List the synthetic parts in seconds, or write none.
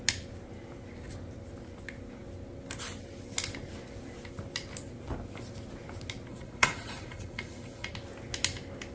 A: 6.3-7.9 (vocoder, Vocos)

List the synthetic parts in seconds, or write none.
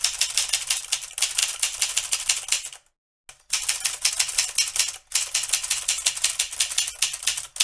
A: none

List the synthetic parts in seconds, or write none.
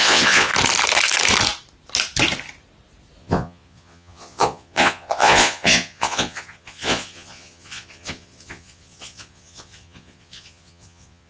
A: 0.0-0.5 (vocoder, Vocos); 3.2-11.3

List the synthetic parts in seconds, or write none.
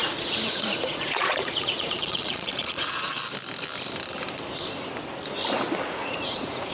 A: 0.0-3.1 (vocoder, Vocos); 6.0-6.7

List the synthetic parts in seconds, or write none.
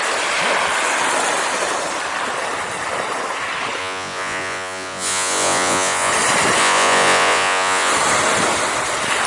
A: 3.8-6.1 (vocoder, Vocos); 6.6-7.9